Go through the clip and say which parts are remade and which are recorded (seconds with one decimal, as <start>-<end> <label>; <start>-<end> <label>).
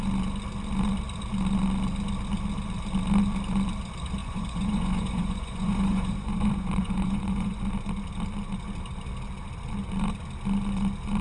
0.0-4.2 recorded; 4.2-7.6 remade; 7.6-11.2 recorded